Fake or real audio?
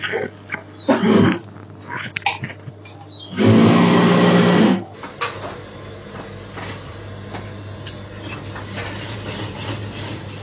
real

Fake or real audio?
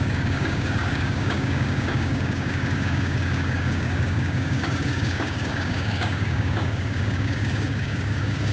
fake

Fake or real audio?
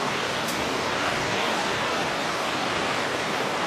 fake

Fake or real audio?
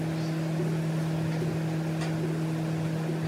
real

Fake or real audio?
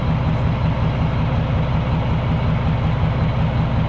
real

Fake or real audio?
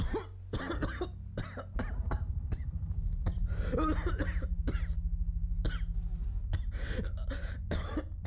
real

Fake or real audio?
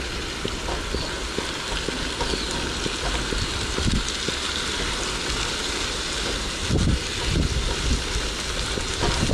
real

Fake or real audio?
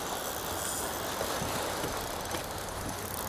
real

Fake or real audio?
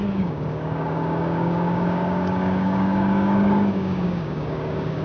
fake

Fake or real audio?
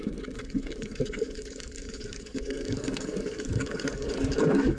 fake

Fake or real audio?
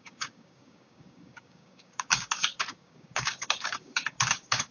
fake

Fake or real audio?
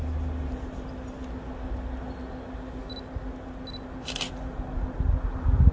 real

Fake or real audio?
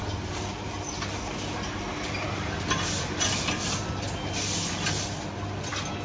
real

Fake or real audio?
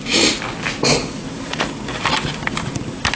real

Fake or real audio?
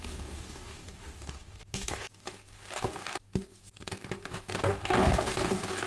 fake